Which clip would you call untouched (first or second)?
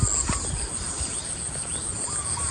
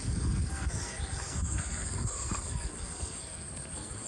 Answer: first